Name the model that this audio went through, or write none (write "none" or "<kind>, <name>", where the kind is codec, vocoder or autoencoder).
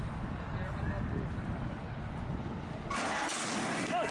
none